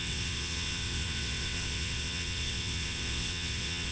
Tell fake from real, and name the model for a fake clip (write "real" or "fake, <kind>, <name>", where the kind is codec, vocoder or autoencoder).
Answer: fake, vocoder, WaveNeXt